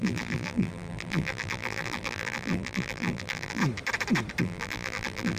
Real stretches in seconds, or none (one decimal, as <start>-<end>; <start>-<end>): 3.6-4.4